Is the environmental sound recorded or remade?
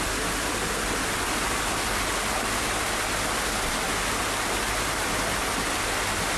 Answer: recorded